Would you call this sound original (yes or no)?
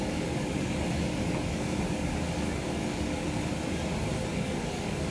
no